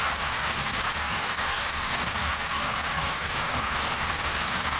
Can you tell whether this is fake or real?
fake